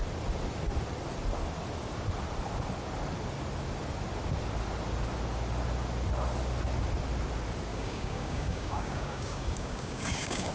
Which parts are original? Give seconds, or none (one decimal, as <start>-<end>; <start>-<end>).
0.0-7.7